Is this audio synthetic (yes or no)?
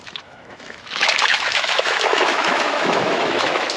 yes